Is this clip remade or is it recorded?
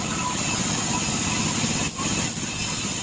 recorded